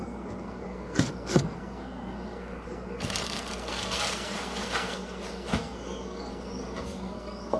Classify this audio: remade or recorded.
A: remade